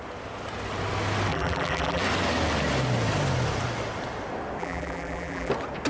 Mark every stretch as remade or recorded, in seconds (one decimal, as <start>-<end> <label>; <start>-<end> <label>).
0.0-1.3 recorded; 1.3-2.0 remade; 2.0-4.6 recorded; 4.6-5.5 remade; 5.5-5.9 recorded